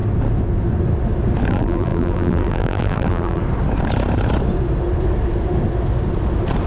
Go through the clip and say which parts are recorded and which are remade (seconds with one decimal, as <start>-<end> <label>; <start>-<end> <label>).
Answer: 0.0-1.5 recorded; 1.5-3.4 remade; 3.4-6.7 recorded